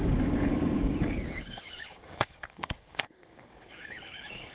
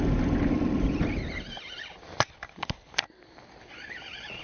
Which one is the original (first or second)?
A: second